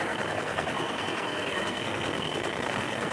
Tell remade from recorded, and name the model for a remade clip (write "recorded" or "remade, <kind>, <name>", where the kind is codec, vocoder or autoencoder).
remade, codec, SNAC